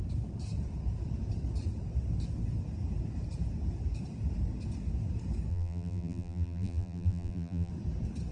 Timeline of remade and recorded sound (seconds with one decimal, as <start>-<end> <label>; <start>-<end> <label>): 0.0-5.5 recorded; 5.5-7.7 remade; 7.7-8.3 recorded